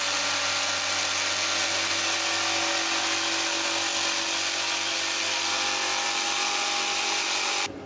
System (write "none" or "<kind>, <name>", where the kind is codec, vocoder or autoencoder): none